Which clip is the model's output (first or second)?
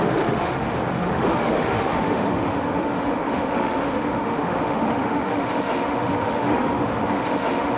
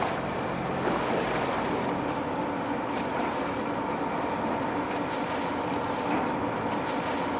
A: first